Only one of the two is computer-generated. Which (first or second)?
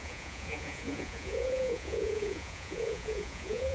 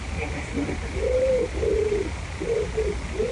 first